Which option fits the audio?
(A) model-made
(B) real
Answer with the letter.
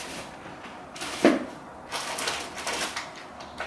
B